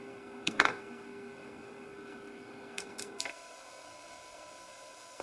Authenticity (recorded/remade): remade